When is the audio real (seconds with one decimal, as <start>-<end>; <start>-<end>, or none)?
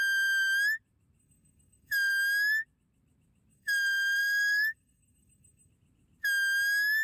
0.0-1.2; 2.1-3.5; 5.7-7.0